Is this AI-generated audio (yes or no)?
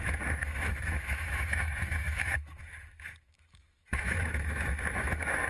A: yes